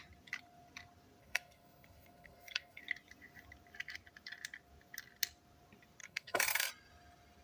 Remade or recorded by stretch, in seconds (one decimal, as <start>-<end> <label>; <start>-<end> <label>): 0.0-1.2 recorded; 1.2-2.8 remade; 2.8-6.0 recorded; 6.0-6.7 remade; 6.7-7.4 recorded